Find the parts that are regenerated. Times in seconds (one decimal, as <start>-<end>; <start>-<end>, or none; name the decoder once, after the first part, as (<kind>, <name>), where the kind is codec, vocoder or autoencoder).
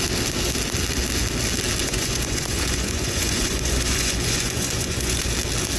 1.8-5.3 (vocoder, Vocos)